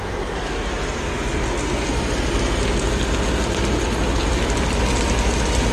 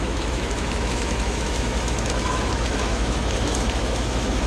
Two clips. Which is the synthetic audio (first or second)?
second